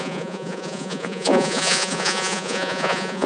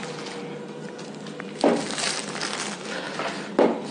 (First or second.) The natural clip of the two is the second